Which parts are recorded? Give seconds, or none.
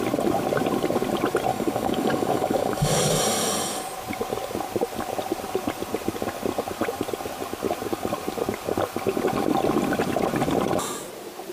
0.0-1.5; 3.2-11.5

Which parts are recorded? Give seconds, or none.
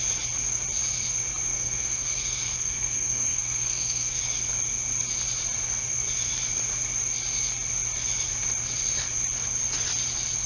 0.0-1.5; 4.2-10.5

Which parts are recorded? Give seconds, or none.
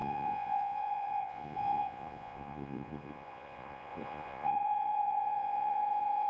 none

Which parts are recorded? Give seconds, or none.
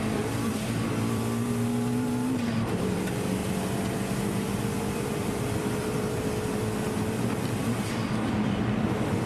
none